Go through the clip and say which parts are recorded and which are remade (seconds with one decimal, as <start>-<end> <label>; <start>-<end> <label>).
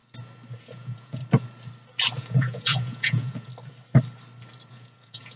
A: 0.0-0.6 recorded; 0.6-1.2 remade; 1.2-2.2 recorded; 2.2-3.5 remade; 3.5-4.7 recorded; 4.7-5.4 remade